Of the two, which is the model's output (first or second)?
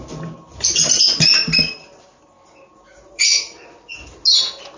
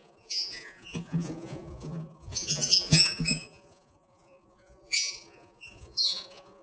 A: second